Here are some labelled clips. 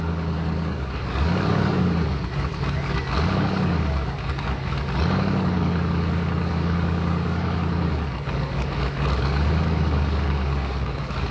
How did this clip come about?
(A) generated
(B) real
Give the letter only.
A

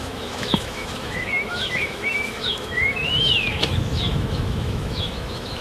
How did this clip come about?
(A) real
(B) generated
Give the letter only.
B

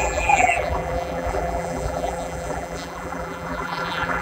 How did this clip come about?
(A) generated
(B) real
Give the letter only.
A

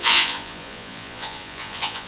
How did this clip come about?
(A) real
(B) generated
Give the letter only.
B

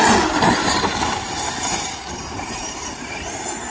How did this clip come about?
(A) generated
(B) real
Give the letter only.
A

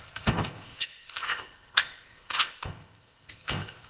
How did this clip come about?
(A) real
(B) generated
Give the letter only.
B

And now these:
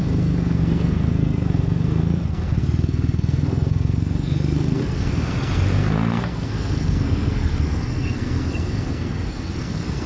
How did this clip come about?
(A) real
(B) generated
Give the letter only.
B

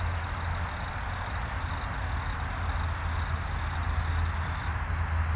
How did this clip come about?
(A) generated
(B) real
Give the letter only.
B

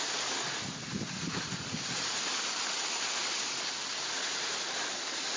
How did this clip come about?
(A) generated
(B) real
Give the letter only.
B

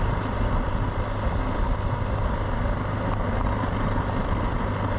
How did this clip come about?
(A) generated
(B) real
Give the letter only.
B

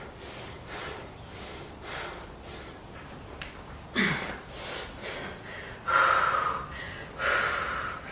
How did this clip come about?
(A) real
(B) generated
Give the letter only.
A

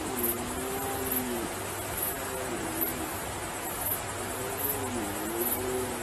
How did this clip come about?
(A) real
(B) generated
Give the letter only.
A